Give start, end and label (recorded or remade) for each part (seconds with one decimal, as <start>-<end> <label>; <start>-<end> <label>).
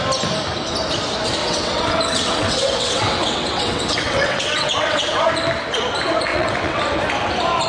0.0-1.4 recorded; 1.4-5.3 remade; 5.3-6.3 recorded; 6.3-6.8 remade; 6.8-7.7 recorded